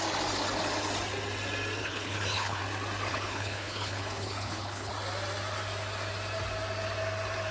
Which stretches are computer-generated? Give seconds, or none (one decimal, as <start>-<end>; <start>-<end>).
1.8-2.6; 3.1-4.9